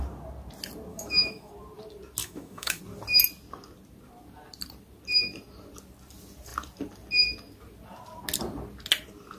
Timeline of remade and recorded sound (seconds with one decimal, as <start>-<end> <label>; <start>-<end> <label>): 0.0-0.9 recorded; 0.9-1.5 remade; 1.5-2.2 recorded; 2.2-2.8 remade; 2.8-9.4 recorded